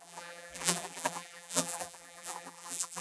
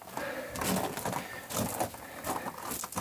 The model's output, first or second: first